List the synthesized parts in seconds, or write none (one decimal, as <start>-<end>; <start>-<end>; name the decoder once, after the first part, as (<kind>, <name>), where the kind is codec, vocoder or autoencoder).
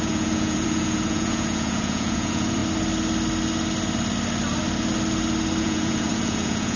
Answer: 0.0-2.6 (vocoder, Vocos); 5.6-6.8